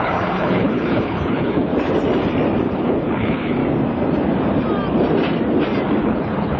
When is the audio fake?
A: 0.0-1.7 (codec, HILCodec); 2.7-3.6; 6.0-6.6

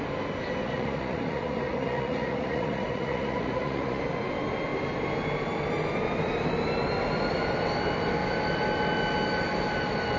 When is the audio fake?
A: 0.6-4.0 (vocoder, Vocos)

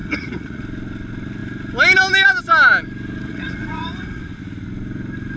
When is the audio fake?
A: 0.0-0.6 (vocoder, Vocos); 3.3-4.2

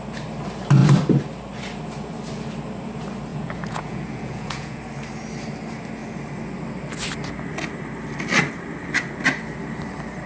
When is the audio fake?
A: 3.3-4.8 (vocoder, Vocos)

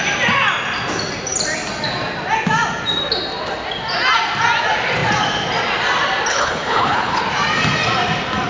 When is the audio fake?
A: 6.3-7.2 (codec, HILCodec)

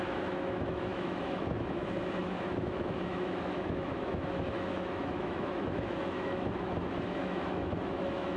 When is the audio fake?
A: 0.0-8.4 (autoencoder, DAC-VAE)

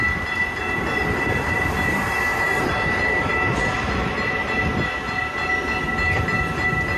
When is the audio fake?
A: 2.3-4.1 (vocoder, BigVGAN v2)

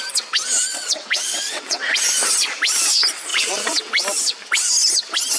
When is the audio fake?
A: 0.7-2.0 (vocoder, WaveNeXt); 3.3-3.9